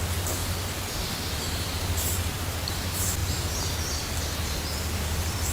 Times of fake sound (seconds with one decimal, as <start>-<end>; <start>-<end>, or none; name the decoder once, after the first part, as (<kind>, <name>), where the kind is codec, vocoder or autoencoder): 0.0-3.2 (vocoder, BigVGAN v2); 5.0-5.5